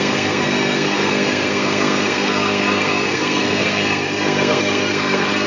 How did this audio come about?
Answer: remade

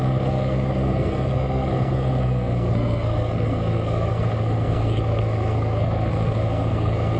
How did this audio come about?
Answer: remade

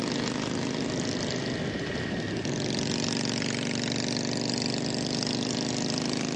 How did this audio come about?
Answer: recorded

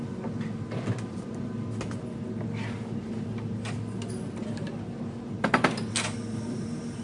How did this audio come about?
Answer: recorded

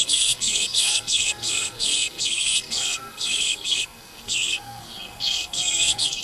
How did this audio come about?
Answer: remade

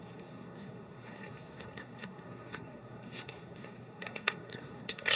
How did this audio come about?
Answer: remade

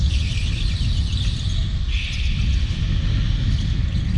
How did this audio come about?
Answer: recorded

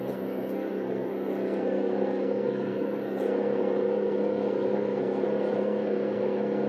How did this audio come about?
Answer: remade